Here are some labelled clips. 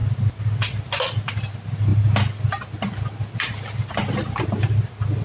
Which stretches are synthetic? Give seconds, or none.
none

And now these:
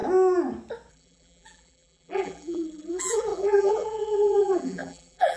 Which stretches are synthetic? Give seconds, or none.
0.9-5.4 (vocoder, BigVGAN v2)

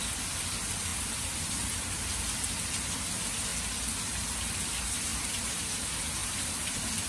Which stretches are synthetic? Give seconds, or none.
0.9-1.5 (vocoder, BigVGAN v2); 5.1-5.6; 6.2-7.1

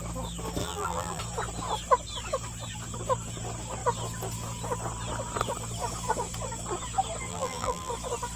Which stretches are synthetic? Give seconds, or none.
0.6-1.2 (vocoder, BigVGAN v2); 7.3-7.9